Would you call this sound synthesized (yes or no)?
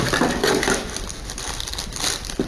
no